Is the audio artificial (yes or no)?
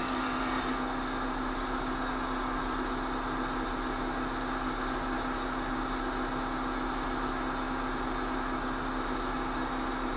no